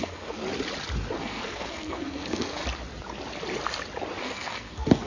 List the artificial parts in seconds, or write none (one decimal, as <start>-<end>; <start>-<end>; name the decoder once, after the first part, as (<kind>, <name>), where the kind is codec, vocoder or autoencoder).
0.0-0.4 (codec, SNAC); 1.2-2.6; 4.2-5.1